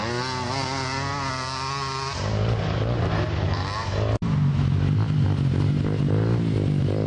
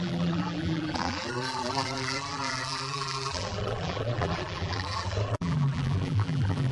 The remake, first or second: second